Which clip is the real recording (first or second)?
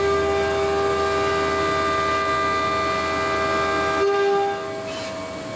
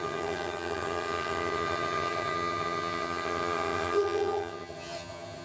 first